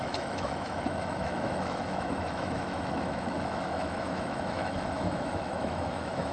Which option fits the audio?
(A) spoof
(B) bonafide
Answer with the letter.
A